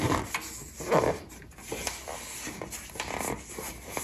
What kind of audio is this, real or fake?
real